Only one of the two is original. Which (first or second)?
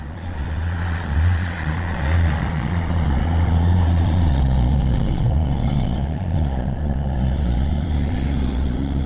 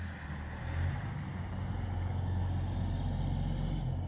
second